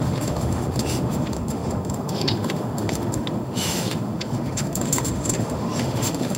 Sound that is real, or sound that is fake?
fake